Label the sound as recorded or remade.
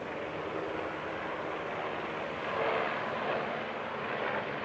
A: recorded